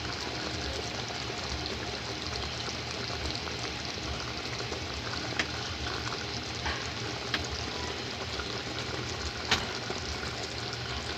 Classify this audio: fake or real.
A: real